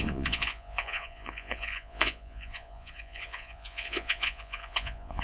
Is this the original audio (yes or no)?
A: no